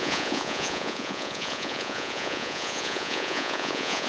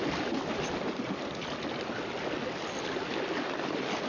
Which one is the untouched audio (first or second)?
second